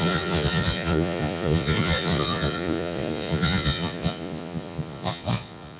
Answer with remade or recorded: remade